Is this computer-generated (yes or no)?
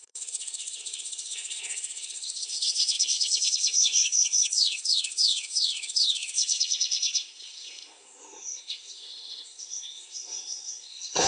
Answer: yes